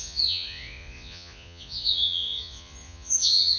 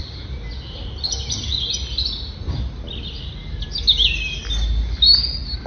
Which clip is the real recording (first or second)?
second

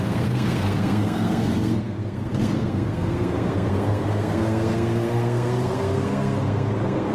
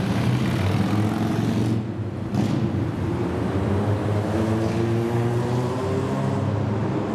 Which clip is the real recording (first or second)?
second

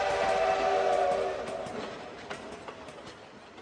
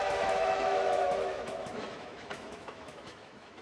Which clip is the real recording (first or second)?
first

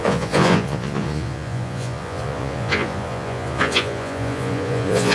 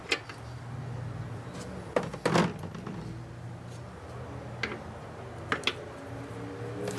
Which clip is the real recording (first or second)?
second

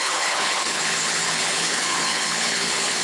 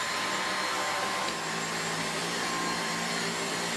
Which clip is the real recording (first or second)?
second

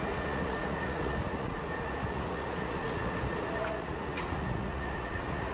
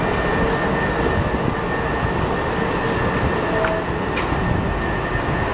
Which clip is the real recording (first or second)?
second